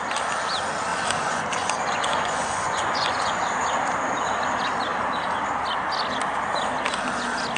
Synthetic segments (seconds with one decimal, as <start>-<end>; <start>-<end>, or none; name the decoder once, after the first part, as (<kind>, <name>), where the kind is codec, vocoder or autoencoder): 0.9-3.4 (vocoder, Vocos)